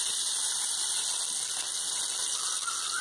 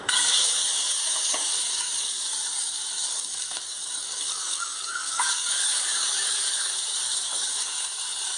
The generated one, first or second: second